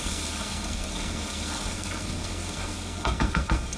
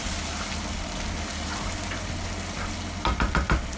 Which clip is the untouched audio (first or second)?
second